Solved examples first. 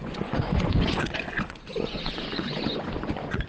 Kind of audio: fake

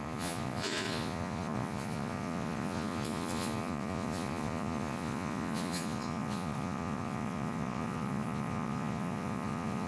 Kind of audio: fake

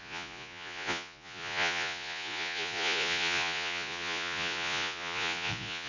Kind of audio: fake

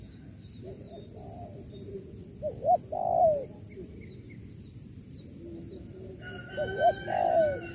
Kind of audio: real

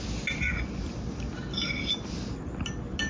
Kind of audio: real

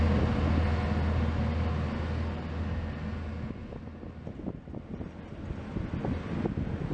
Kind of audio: real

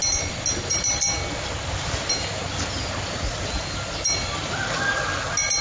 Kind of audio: real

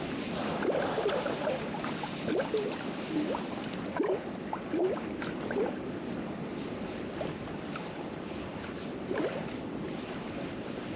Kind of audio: real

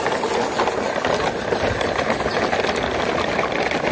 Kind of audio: real